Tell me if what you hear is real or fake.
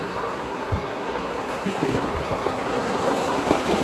fake